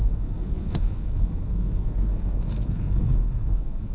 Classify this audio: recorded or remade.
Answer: remade